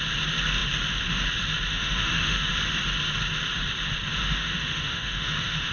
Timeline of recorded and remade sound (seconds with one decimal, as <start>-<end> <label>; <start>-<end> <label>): 0.0-1.7 recorded; 1.7-2.5 remade; 2.5-4.2 recorded; 4.2-5.7 remade